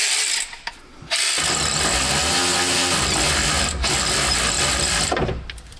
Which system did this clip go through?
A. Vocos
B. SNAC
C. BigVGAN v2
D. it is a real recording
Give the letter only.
D